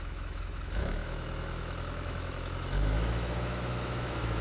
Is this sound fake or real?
fake